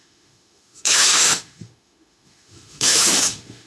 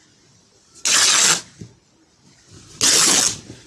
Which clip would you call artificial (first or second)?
first